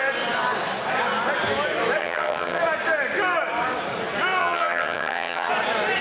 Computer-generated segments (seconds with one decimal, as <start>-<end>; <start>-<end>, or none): 2.0-2.6; 4.4-5.5